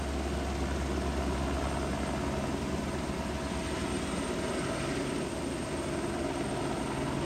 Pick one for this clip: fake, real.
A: real